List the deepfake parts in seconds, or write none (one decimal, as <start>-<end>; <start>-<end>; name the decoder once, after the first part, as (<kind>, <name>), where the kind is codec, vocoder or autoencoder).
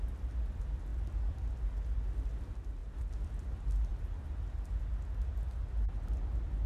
0.9-1.5 (vocoder, BigVGAN v2)